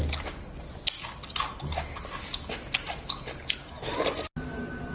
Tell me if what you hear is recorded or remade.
recorded